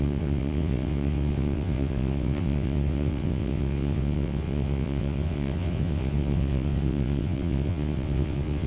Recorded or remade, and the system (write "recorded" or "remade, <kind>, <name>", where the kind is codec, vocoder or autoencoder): remade, vocoder, WaveNeXt